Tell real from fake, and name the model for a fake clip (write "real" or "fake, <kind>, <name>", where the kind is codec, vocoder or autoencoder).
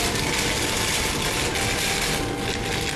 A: real